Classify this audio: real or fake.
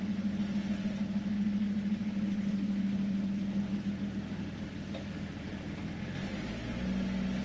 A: real